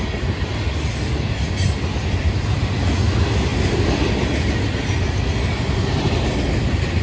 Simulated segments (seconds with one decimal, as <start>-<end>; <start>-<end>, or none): none